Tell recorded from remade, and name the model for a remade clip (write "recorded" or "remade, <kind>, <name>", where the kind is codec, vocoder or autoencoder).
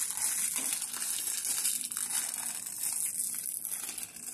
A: recorded